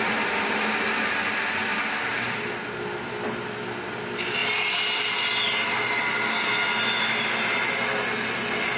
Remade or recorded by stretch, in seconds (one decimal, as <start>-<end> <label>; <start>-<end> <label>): 0.0-8.8 recorded